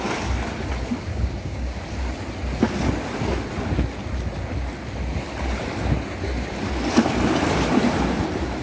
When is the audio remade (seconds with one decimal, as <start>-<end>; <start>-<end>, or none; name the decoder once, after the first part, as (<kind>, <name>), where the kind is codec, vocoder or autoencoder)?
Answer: 1.1-1.8 (codec, DAC)